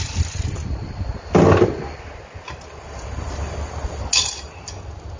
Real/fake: real